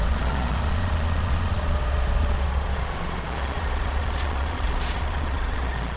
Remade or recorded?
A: remade